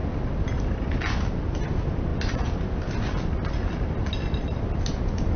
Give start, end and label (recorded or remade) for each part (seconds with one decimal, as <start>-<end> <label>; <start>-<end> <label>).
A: 0.0-5.4 recorded